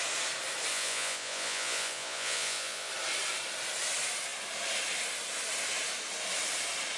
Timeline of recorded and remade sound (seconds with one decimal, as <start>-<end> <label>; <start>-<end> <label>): 0.0-0.7 recorded; 0.7-2.9 remade; 2.9-7.0 recorded